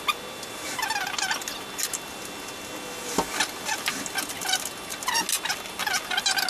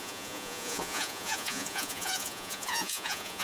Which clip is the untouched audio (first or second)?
first